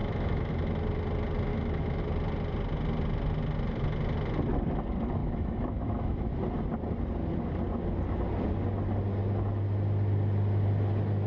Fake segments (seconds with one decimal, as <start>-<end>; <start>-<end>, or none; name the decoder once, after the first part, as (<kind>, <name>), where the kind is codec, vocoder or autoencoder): 0.0-0.5 (autoencoder, DAC-VAE); 1.5-2.0; 5.2-6.3